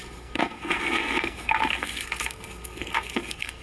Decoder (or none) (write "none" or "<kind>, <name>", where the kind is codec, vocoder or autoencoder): codec, SNAC